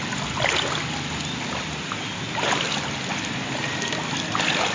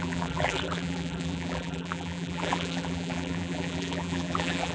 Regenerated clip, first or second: second